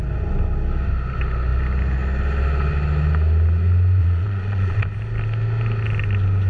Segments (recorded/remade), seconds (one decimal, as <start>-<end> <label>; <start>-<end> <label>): 0.0-4.0 recorded; 4.0-4.8 remade; 4.8-6.5 recorded

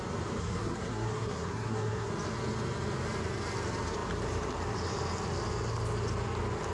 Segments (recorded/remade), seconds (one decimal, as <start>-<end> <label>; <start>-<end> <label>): 0.0-0.4 recorded; 0.4-2.1 remade; 2.1-6.7 recorded

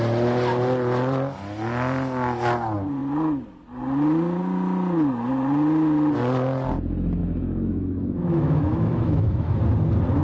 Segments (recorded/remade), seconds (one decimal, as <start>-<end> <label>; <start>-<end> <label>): 0.0-7.2 recorded; 7.2-9.6 remade; 9.6-10.2 recorded

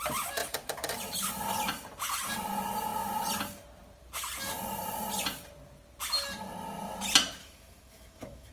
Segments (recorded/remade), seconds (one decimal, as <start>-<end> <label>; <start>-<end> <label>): 0.0-7.4 recorded; 7.4-8.5 remade

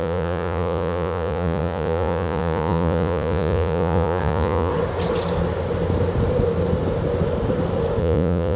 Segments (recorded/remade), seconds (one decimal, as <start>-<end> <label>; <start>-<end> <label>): 0.0-4.7 remade; 4.7-8.0 recorded; 8.0-8.6 remade

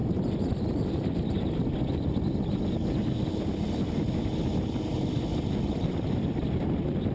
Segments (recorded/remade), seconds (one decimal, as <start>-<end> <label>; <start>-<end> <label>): 0.0-7.1 recorded

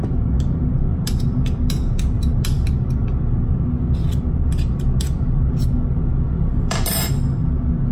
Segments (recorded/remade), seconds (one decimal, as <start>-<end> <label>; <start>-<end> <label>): 0.0-7.9 recorded

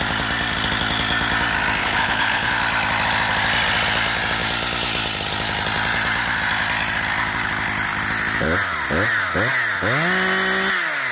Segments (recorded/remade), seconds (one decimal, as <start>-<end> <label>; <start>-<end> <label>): 0.0-1.8 recorded; 1.8-2.5 remade; 2.5-11.1 recorded